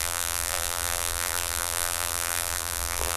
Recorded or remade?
remade